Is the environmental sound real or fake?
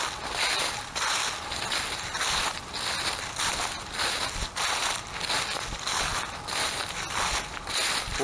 real